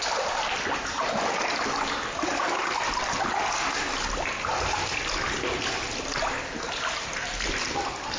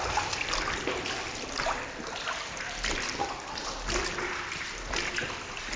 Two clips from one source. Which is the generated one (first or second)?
second